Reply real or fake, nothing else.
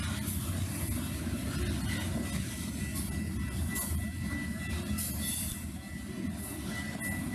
real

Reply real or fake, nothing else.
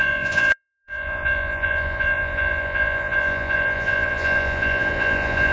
fake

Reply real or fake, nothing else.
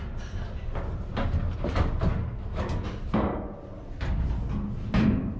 real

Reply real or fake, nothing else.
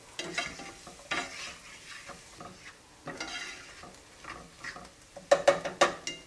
real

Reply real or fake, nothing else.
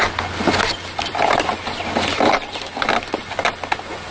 real